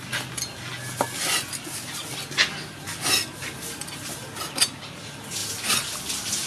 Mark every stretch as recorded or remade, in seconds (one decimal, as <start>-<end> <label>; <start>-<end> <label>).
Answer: 0.0-6.5 recorded